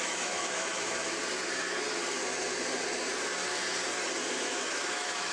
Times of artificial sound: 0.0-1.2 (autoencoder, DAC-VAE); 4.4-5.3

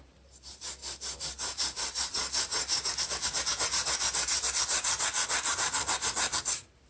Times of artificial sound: none

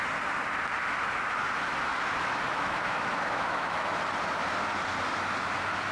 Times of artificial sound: 1.9-4.0 (autoencoder, DAC-VAE)

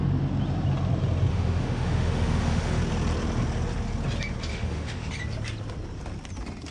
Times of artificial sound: 1.3-2.8 (autoencoder, DAC-VAE); 4.5-5.1